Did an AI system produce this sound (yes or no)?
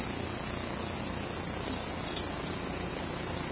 no